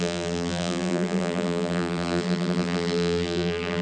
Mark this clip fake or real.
fake